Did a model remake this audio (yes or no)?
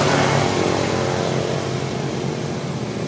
no